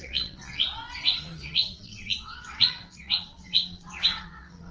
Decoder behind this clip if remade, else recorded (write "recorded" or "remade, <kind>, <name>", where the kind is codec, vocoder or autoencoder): remade, vocoder, WaveNeXt